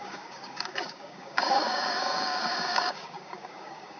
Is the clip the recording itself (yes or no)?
no